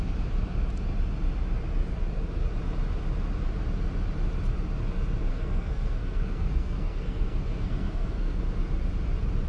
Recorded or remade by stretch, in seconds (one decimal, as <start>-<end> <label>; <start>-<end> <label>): 0.0-5.3 recorded; 5.3-8.4 remade; 8.4-9.5 recorded